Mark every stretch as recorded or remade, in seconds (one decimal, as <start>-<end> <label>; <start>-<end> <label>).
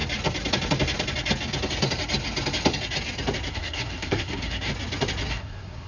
0.0-3.5 recorded; 3.5-4.7 remade; 4.7-5.3 recorded; 5.3-5.9 remade